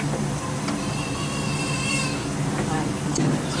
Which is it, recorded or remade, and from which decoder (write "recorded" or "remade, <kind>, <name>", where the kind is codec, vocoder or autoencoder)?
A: recorded